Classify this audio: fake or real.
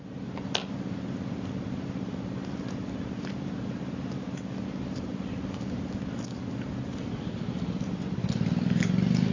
real